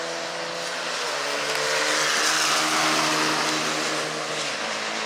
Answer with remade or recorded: recorded